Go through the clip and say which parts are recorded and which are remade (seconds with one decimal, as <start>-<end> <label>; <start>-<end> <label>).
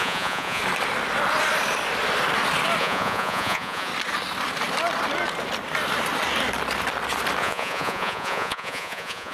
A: 0.0-0.6 remade; 0.6-2.8 recorded; 2.8-3.9 remade; 3.9-7.4 recorded; 7.4-9.3 remade